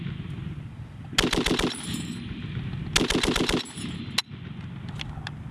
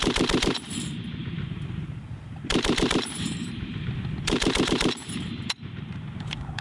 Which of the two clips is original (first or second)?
first